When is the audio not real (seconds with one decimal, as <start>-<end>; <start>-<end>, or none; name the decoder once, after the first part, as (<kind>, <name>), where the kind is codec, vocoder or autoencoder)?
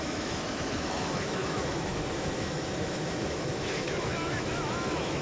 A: 0.0-5.2 (autoencoder, DAC-VAE)